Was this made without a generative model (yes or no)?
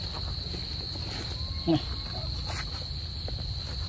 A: yes